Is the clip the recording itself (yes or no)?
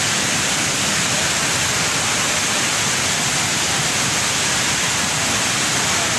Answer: yes